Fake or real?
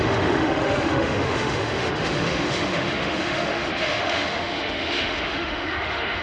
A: fake